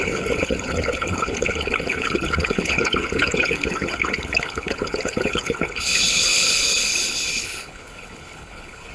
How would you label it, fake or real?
fake